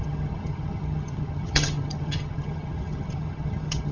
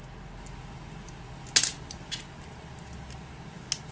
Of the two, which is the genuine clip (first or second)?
second